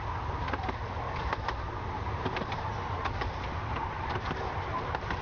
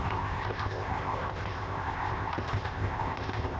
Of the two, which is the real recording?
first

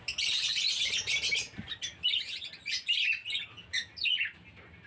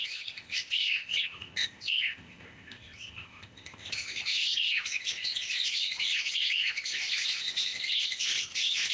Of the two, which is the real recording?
first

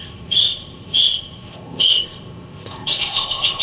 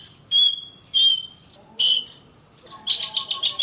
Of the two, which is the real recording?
second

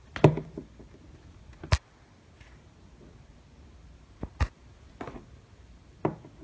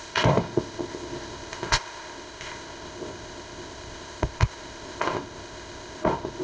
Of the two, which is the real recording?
first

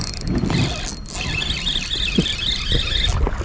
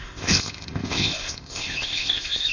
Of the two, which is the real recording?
first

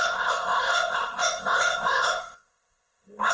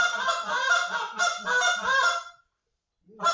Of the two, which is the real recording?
second